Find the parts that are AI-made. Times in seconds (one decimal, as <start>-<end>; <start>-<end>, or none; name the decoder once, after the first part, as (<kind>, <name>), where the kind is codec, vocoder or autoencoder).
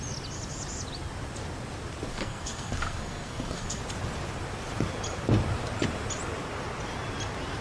2.1-3.8 (codec, SNAC)